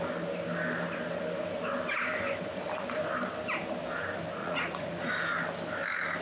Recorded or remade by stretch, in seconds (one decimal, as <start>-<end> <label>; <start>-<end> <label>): 0.0-4.4 recorded; 4.4-5.1 remade; 5.1-6.2 recorded